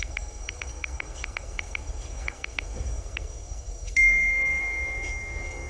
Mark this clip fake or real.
fake